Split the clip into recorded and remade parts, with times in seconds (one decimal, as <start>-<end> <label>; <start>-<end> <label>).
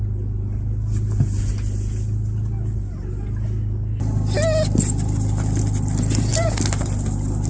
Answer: 0.0-7.5 recorded